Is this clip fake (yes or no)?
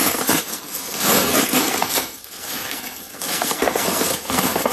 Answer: yes